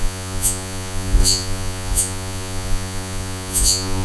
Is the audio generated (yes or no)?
yes